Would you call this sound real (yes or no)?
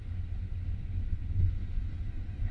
no